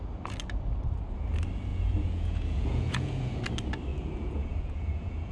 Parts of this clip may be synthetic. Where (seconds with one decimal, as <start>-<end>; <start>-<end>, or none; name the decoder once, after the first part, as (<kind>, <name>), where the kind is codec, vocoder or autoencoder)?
1.7-3.4 (vocoder, Vocos); 3.9-5.3